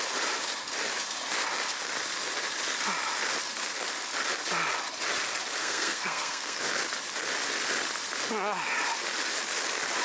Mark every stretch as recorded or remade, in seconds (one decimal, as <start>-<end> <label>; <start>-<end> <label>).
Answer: 0.0-5.6 recorded; 5.6-6.6 remade; 6.6-10.0 recorded